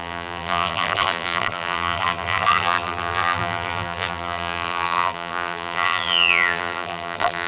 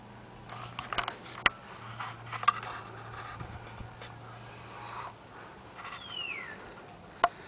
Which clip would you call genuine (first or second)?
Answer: second